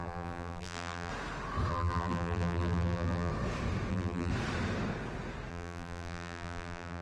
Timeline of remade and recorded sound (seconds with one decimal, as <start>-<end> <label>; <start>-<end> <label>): 0.0-1.1 remade; 1.1-1.7 recorded; 1.7-3.3 remade; 3.3-3.9 recorded; 3.9-4.3 remade; 4.3-5.5 recorded; 5.5-7.0 remade